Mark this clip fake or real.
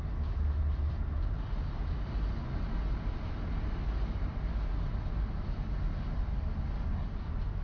real